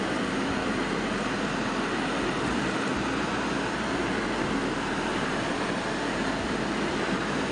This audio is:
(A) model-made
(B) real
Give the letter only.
A